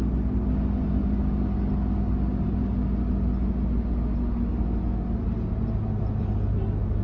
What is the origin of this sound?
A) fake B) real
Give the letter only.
B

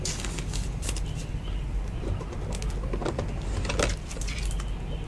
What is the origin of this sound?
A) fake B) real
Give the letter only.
B